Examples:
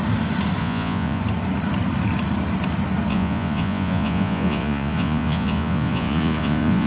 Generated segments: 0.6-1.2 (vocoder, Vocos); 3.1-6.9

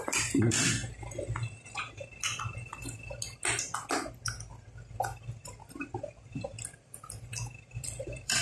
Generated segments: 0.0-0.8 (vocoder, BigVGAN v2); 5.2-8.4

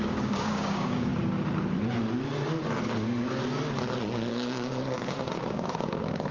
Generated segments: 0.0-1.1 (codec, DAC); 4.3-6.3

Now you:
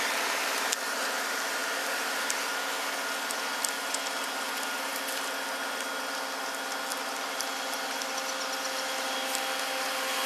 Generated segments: none

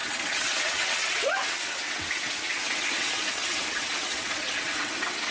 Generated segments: 0.0-5.3 (vocoder, WaveNeXt)

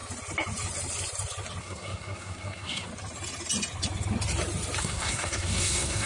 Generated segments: 1.6-2.9 (codec, SNAC); 4.8-6.1

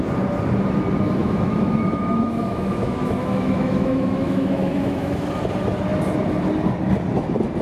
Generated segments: 1.2-5.3 (autoencoder, DAC-VAE)